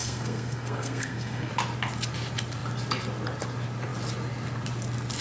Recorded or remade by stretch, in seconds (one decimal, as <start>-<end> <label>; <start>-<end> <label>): 0.0-1.5 remade; 1.5-5.2 recorded